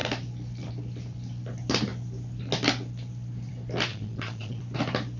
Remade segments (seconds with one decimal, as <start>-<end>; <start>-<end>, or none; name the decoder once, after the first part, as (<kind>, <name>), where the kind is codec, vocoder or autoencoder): 3.9-4.6 (vocoder, Vocos)